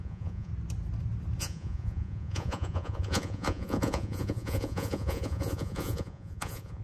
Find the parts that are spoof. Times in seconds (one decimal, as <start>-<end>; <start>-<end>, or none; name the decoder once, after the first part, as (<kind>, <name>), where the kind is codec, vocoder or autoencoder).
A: 0.0-0.5 (vocoder, Vocos); 1.4-6.8